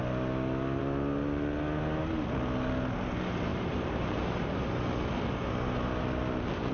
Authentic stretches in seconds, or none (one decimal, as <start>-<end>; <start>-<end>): 0.0-3.5; 4.6-6.7